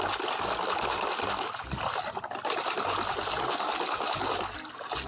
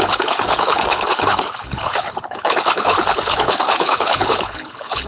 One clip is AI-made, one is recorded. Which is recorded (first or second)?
first